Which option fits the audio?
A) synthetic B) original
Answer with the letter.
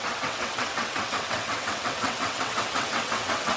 A